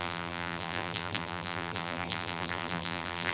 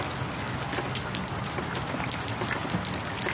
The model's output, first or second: first